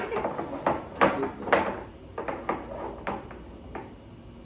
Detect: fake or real real